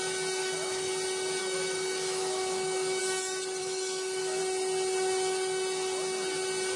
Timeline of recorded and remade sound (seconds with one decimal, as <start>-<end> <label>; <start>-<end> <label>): 0.0-0.4 recorded; 0.4-0.9 remade; 0.9-1.4 recorded; 1.4-3.0 remade; 3.0-3.6 recorded; 3.6-4.4 remade; 4.4-6.8 recorded

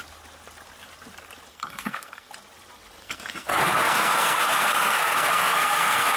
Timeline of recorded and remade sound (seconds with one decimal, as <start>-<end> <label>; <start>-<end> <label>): 0.0-1.5 recorded; 1.5-2.3 remade; 2.3-3.0 recorded; 3.0-6.2 remade

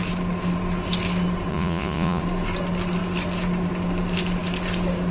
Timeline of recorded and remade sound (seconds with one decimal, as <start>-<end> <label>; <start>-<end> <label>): 0.0-1.5 recorded; 1.5-2.2 remade; 2.2-5.1 recorded

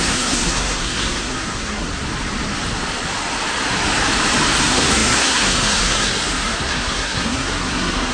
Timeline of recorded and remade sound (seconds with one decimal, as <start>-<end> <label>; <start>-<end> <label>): 0.0-1.9 remade; 1.9-4.6 recorded; 4.6-8.1 remade

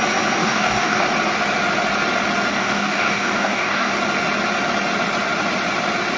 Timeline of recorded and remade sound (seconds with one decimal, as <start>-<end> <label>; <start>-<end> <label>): 0.0-0.4 recorded; 0.4-1.0 remade; 1.0-2.5 recorded; 2.5-3.9 remade; 3.9-6.2 recorded

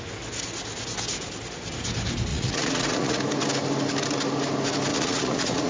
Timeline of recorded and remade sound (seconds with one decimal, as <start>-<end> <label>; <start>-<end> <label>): 0.0-2.3 recorded; 2.3-3.2 remade; 3.2-4.9 recorded; 4.9-5.7 remade